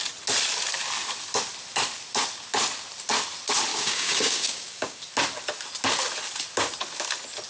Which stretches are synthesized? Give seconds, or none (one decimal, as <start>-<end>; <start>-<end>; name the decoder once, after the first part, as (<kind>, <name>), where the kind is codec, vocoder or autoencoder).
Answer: 3.7-5.0 (codec, DAC)